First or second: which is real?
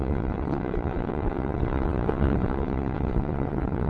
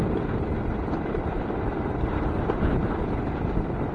second